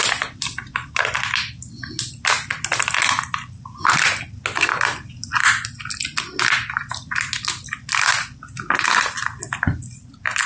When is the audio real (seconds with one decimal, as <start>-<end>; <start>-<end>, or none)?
0.0-10.5